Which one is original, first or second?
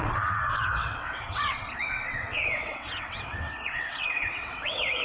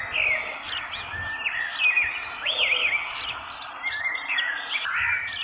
second